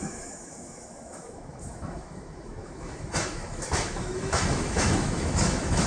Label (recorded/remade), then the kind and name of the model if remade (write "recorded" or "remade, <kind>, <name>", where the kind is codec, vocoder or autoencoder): remade, autoencoder, DAC-VAE